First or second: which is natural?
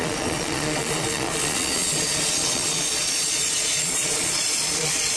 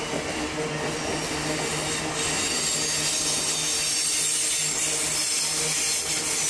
second